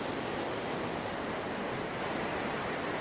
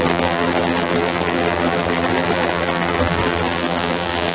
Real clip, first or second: first